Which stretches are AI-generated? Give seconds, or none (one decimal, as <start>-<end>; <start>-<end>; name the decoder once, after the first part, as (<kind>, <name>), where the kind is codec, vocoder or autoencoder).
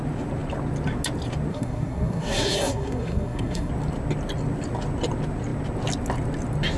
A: 1.5-3.7 (codec, SNAC)